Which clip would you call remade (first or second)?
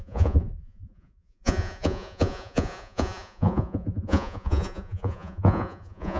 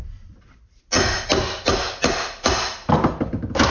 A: first